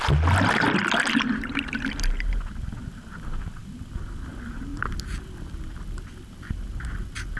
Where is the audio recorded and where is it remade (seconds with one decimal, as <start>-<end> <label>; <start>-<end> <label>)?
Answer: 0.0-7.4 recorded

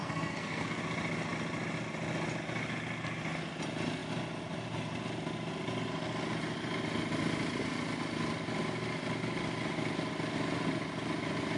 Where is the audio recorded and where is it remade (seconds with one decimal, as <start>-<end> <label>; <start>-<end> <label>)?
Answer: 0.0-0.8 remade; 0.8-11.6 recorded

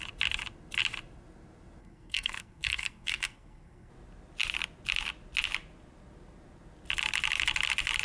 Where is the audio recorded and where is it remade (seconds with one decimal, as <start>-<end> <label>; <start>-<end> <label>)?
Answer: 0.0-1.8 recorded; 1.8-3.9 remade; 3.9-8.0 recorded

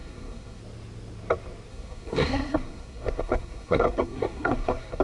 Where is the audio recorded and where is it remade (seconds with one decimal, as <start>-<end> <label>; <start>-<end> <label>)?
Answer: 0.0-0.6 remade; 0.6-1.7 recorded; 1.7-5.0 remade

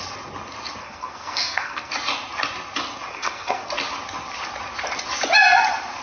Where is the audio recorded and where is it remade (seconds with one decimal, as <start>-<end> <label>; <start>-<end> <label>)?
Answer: 0.0-0.8 recorded; 0.8-1.9 remade; 1.9-3.1 recorded; 3.1-3.7 remade; 3.7-6.0 recorded

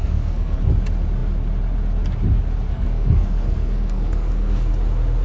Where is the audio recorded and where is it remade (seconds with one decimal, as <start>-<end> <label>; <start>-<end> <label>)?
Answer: 0.0-0.6 remade; 0.6-2.7 recorded; 2.7-4.7 remade; 4.7-5.2 recorded

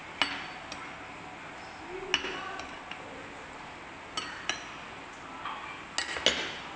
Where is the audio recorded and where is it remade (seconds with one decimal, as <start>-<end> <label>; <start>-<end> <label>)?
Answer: 0.0-6.8 recorded